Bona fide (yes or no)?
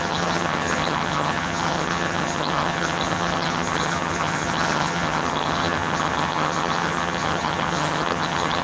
no